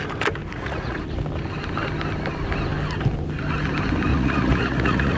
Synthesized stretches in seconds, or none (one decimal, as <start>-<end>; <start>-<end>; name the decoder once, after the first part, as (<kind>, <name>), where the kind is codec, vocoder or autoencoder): 0.5-1.0 (vocoder, Vocos); 4.1-5.2